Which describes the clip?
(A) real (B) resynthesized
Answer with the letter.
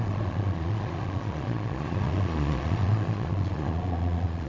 B